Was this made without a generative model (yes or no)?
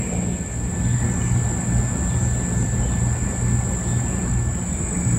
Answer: yes